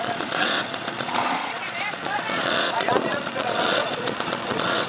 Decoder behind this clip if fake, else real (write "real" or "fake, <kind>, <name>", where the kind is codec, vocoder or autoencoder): fake, vocoder, Vocos